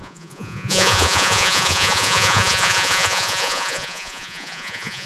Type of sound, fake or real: fake